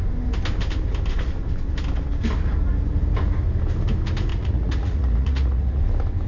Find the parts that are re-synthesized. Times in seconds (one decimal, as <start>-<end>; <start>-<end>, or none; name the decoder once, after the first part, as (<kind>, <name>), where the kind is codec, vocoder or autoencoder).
4.3-5.8 (vocoder, Vocos)